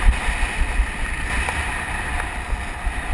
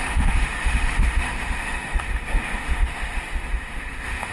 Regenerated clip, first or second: second